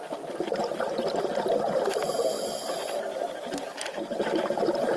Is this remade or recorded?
recorded